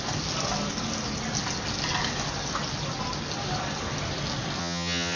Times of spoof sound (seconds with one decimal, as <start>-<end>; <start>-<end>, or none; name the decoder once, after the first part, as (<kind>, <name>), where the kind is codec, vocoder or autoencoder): 4.6-5.2 (vocoder, HiFi-GAN)